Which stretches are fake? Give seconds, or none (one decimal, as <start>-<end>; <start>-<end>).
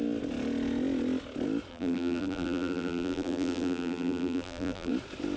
1.7-4.9